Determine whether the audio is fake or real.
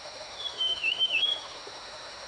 fake